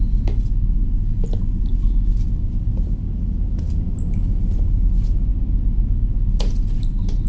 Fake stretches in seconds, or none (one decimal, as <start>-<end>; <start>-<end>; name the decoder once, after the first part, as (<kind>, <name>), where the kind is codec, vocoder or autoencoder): none